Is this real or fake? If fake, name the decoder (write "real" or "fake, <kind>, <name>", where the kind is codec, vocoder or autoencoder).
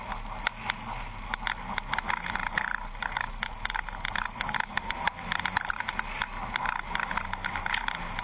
real